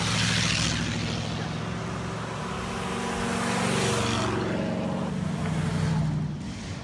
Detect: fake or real real